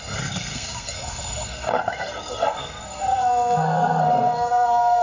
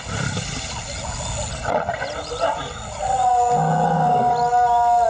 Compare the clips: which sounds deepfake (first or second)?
first